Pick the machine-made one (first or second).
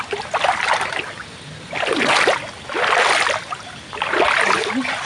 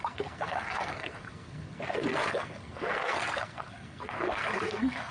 second